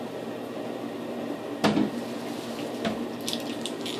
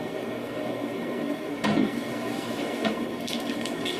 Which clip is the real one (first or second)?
first